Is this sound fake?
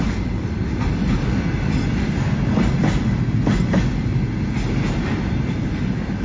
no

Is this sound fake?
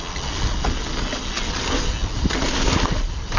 no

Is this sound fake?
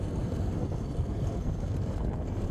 yes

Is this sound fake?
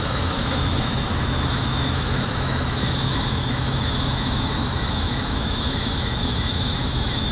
yes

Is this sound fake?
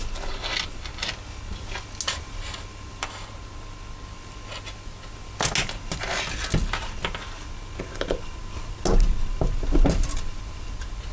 no